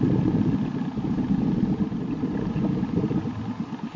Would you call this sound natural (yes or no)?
yes